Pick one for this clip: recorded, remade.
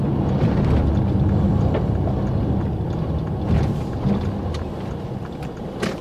recorded